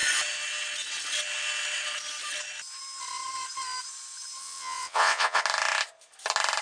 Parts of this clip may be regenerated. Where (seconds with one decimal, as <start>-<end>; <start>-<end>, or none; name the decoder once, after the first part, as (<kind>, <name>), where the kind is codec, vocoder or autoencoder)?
4.4-5.4 (vocoder, WaveNeXt)